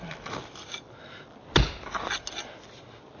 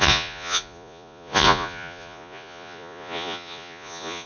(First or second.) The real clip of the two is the first